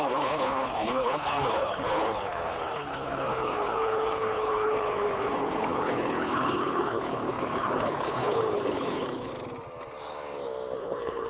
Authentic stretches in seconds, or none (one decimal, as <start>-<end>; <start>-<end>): 9.3-10.8